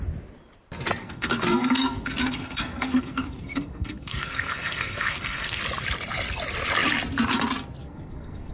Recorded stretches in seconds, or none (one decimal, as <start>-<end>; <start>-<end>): 0.0-1.0; 5.6-7.8